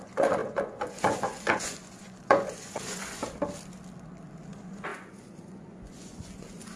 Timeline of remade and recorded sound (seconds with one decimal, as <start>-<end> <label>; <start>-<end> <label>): 0.0-3.2 remade; 3.2-4.5 recorded; 4.5-6.8 remade